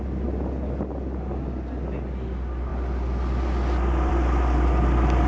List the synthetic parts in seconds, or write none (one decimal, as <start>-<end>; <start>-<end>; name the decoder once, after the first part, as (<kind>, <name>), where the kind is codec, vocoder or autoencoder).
none